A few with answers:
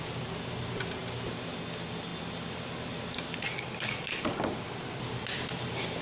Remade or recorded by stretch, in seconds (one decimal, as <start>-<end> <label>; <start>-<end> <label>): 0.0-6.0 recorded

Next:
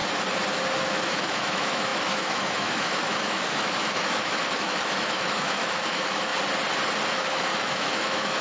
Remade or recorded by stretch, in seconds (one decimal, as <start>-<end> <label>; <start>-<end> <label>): 0.0-0.8 recorded; 0.8-6.3 remade; 6.3-7.1 recorded; 7.1-8.4 remade

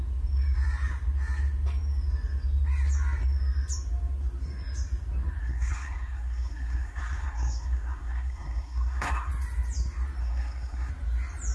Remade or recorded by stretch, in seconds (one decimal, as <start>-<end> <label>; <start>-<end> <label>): 0.0-5.4 recorded; 5.4-9.3 remade; 9.3-10.2 recorded; 10.2-10.9 remade; 10.9-11.5 recorded

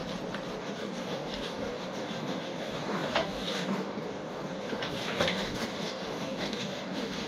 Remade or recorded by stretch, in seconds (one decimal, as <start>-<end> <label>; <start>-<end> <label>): 0.0-0.6 recorded; 0.6-7.3 remade

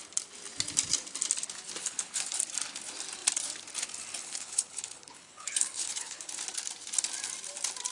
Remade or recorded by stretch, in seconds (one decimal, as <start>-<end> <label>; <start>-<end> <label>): 0.0-1.8 recorded; 1.8-2.4 remade; 2.4-4.2 recorded; 4.2-6.3 remade; 6.3-7.9 recorded